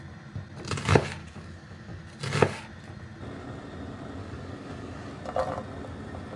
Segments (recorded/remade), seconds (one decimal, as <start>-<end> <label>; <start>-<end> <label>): 0.0-1.2 recorded; 1.2-2.0 remade; 2.0-4.2 recorded; 4.2-5.1 remade; 5.1-6.4 recorded

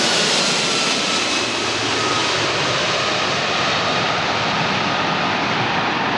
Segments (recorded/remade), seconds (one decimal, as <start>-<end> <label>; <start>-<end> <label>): 0.0-2.2 recorded; 2.2-5.0 remade; 5.0-6.2 recorded

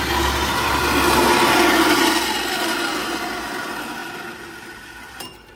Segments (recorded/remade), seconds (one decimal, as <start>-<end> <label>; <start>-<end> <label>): 0.0-4.0 recorded; 4.0-5.6 remade

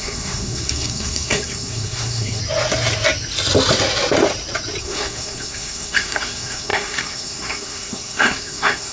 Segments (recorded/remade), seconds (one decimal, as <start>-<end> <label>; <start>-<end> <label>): 0.0-2.4 remade; 2.4-4.8 recorded; 4.8-8.9 remade

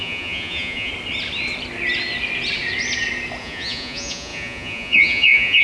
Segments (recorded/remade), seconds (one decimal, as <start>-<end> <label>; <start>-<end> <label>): 0.0-0.9 remade; 0.9-3.4 recorded; 3.4-5.6 remade

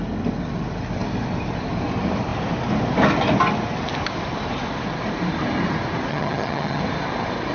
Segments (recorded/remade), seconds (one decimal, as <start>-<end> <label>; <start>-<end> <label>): 0.0-6.1 recorded; 6.1-6.8 remade; 6.8-7.5 recorded